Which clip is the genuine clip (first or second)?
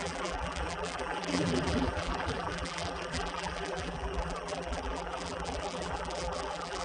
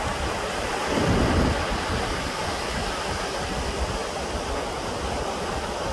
second